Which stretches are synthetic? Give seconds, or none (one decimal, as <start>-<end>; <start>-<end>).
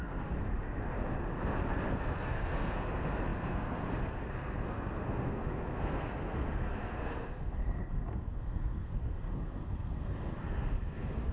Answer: 0.0-1.0; 1.7-11.3